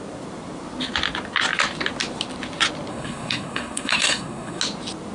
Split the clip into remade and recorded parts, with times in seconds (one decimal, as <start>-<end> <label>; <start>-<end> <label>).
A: 0.0-2.9 recorded; 2.9-4.6 remade; 4.6-5.1 recorded